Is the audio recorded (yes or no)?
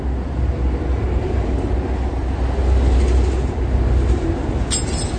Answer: yes